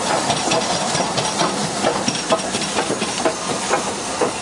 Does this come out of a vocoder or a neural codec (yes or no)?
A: no